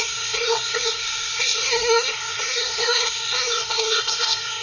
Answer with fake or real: fake